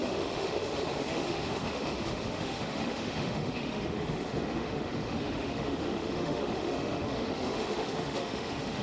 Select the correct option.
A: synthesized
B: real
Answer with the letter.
A